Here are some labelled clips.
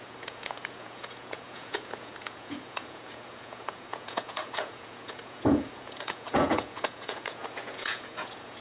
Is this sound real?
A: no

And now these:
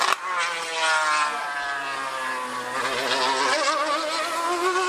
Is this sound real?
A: yes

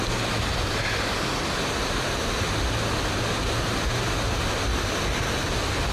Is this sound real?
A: yes